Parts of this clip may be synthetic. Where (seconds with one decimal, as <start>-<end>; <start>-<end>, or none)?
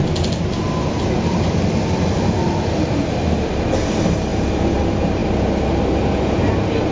none